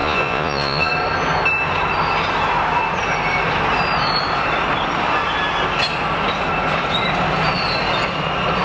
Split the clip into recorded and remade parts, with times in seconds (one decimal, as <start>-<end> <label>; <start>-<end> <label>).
0.0-0.9 remade; 0.9-8.6 recorded